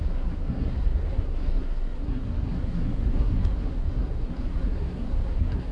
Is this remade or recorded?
remade